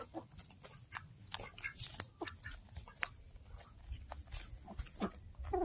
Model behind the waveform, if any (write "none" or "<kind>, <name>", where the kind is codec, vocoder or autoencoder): none